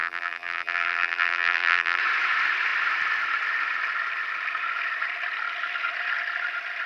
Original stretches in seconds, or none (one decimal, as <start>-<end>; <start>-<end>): 2.0-6.9